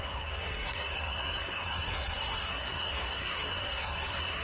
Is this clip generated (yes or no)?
yes